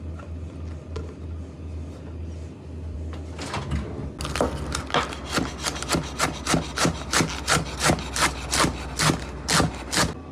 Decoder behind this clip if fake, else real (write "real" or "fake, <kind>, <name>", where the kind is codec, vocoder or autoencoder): real